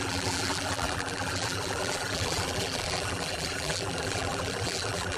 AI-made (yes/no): yes